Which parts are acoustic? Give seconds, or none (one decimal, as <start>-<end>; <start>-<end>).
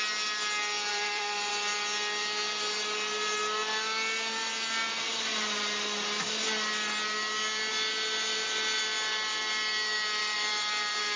0.0-0.9; 1.5-10.2